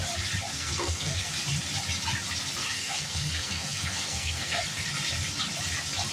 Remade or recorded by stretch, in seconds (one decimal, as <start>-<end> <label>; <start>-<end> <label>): 0.0-0.5 recorded; 0.5-1.3 remade; 1.3-2.6 recorded; 2.6-4.6 remade; 4.6-6.1 recorded